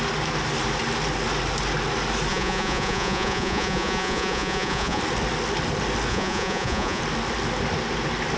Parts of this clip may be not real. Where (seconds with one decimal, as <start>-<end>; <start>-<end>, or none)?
2.3-5.0; 6.1-7.0

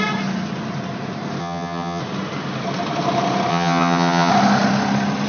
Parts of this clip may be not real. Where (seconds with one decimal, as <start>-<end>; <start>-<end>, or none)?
1.4-2.0; 3.5-4.3

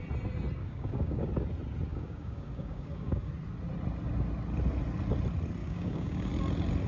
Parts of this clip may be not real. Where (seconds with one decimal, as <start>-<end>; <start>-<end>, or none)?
0.6-1.3; 1.9-3.3; 5.6-6.3